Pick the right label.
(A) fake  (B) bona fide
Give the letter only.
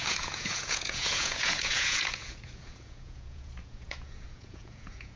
A